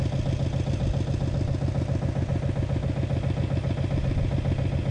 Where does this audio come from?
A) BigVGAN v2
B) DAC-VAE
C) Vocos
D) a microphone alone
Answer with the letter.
D